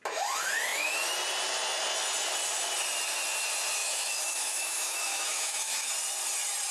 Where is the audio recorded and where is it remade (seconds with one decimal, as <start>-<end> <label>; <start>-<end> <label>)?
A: 0.0-3.8 recorded; 3.8-5.9 remade; 5.9-6.7 recorded